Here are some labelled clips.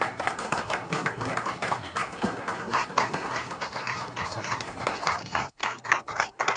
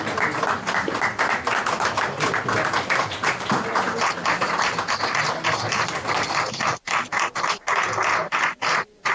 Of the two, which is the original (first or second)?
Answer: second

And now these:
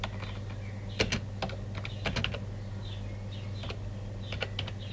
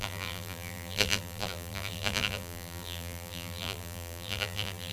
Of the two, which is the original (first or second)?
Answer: first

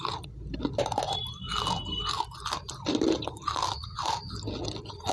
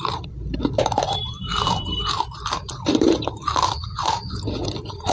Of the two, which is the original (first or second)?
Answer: first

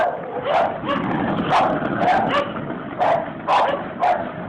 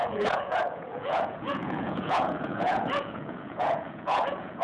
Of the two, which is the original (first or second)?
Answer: first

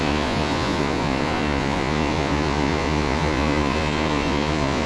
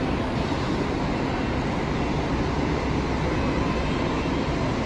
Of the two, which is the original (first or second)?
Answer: second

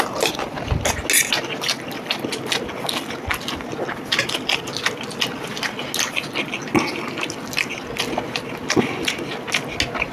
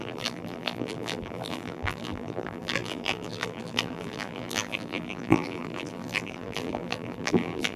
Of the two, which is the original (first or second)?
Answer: first